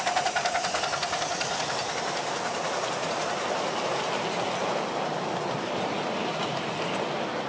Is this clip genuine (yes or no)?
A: yes